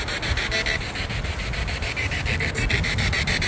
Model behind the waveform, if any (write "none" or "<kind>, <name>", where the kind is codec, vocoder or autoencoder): none